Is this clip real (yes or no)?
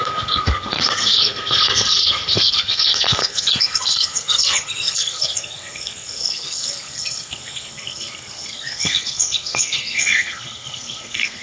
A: no